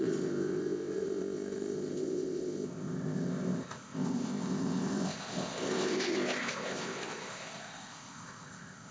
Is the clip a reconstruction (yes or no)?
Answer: yes